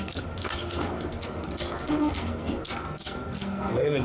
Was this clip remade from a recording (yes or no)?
yes